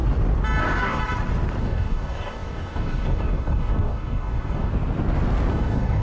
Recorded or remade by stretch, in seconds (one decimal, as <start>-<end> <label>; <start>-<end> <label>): 0.0-0.6 recorded; 0.6-1.0 remade; 1.0-1.6 recorded; 1.6-4.7 remade; 4.7-5.5 recorded; 5.5-6.0 remade